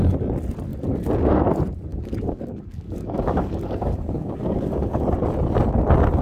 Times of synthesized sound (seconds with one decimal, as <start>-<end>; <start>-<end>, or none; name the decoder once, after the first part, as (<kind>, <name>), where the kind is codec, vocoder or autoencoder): 1.9-5.0 (codec, DAC)

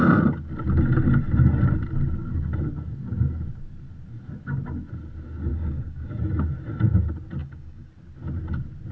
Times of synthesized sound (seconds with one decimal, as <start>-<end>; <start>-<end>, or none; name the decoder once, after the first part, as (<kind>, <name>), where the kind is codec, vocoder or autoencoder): 5.5-6.1 (codec, DAC); 7.4-7.9